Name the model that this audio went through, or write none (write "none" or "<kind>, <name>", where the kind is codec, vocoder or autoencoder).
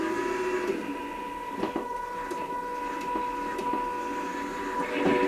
none